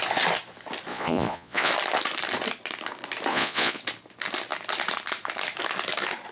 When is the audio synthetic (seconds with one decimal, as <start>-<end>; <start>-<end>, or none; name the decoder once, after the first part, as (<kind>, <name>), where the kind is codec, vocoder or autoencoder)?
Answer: 0.9-1.7 (vocoder, Vocos); 3.3-3.8